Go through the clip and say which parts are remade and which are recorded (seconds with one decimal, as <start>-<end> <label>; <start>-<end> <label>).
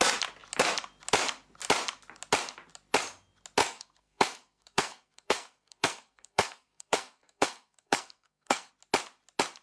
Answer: 0.0-3.6 recorded; 3.6-8.7 remade; 8.7-9.6 recorded